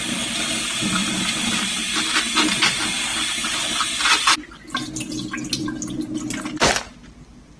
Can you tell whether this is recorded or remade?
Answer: recorded